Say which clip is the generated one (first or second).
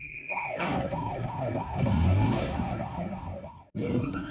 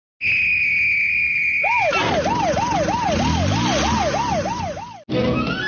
first